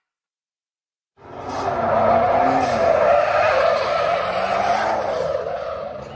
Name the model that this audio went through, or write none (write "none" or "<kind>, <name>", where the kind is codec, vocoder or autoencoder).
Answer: none